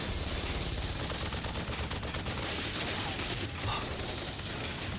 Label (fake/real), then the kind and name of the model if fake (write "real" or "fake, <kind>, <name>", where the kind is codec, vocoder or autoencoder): real